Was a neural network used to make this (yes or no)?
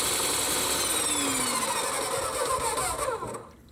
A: no